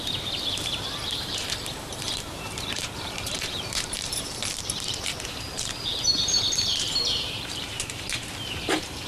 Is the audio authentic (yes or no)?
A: no